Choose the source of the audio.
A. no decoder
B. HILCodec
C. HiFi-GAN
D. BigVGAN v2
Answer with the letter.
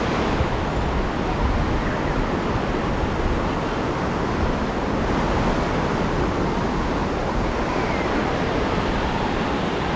A